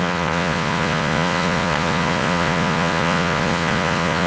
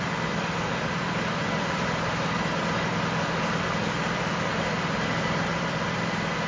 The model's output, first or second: first